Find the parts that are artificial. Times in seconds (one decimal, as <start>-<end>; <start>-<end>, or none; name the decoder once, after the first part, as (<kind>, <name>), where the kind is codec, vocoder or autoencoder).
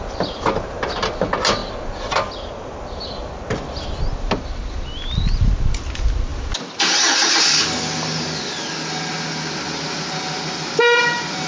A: none